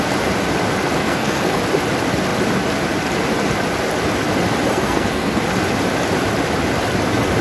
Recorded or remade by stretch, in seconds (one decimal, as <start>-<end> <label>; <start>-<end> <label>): 0.0-1.0 recorded; 1.0-1.6 remade; 1.6-4.7 recorded; 4.7-5.4 remade; 5.4-7.4 recorded